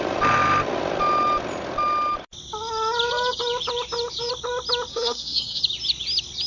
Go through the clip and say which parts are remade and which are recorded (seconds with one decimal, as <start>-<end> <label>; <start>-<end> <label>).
0.0-4.9 recorded; 4.9-5.6 remade; 5.6-6.5 recorded